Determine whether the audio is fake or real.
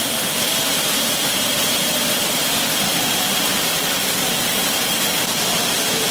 fake